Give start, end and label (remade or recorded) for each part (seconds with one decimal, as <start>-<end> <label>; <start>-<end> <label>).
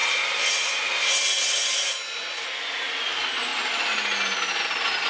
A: 0.0-5.1 recorded